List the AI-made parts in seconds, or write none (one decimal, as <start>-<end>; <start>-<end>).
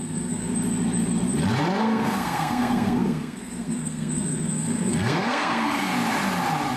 0.0-0.5; 1.8-5.9